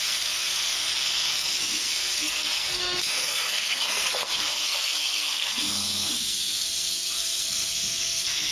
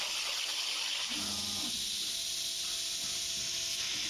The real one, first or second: second